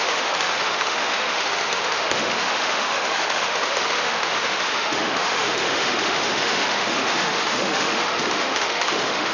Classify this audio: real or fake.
fake